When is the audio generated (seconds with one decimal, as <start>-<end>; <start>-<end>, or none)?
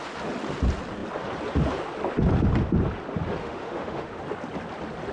3.4-4.2